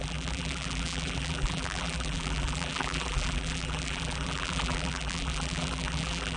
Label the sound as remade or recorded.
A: remade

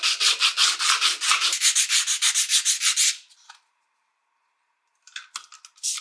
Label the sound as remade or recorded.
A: recorded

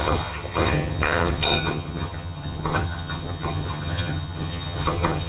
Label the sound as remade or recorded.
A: remade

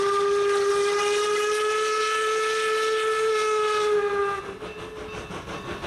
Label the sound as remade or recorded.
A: recorded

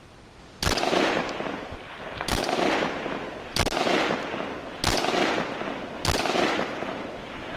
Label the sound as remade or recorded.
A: recorded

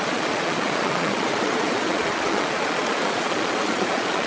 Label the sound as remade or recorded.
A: remade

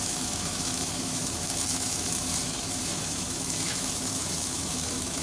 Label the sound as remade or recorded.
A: remade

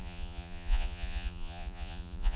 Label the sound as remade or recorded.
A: remade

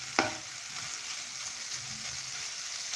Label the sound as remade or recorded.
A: recorded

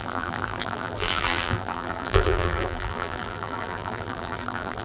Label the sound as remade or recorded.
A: remade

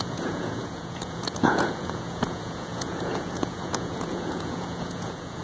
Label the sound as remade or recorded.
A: remade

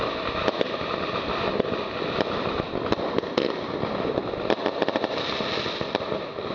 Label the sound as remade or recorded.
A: recorded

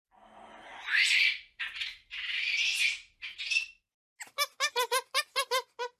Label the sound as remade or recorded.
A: recorded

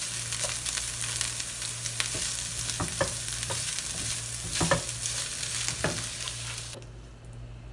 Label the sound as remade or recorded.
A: recorded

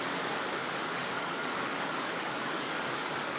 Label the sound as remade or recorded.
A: remade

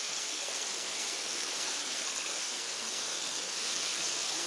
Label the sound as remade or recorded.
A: remade